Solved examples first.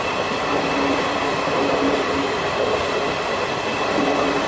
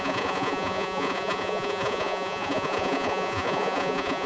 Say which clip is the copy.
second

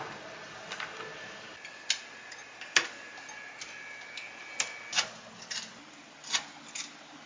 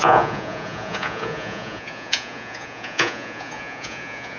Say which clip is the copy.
second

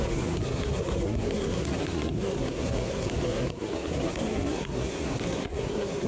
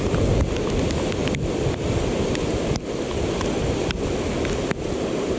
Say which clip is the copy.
first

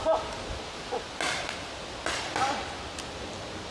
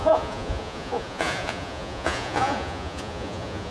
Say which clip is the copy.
second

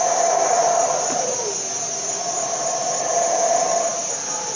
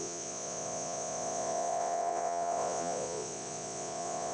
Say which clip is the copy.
second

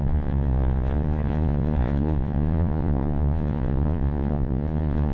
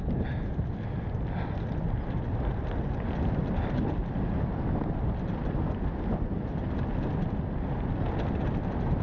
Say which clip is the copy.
first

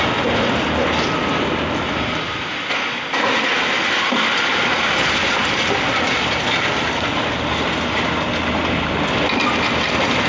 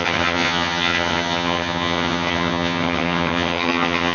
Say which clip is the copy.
second